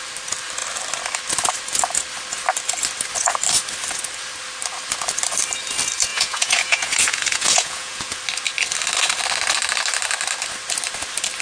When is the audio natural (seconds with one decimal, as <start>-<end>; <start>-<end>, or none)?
0.0-6.1; 8.2-11.4